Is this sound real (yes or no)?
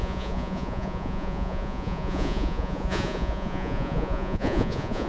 no